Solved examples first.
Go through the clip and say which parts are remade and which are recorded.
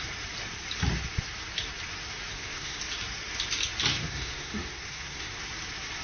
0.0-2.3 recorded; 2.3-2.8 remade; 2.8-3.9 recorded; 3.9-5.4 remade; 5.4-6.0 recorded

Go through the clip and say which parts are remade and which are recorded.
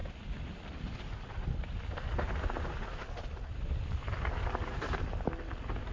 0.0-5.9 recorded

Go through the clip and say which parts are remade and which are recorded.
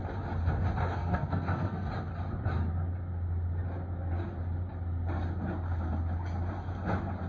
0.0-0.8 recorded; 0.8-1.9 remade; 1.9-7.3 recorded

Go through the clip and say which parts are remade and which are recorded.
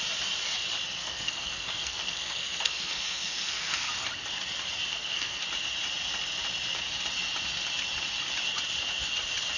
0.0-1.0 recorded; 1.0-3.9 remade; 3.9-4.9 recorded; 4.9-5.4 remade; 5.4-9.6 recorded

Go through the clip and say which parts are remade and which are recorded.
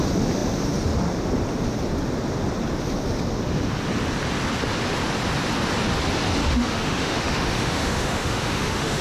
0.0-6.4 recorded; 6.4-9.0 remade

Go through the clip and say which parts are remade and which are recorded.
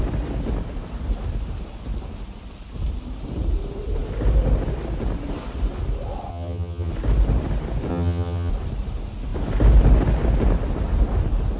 0.0-6.3 recorded; 6.3-6.9 remade; 6.9-7.9 recorded; 7.9-8.5 remade; 8.5-11.6 recorded